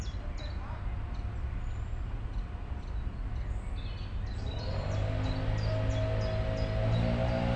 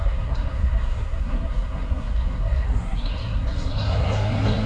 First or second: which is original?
first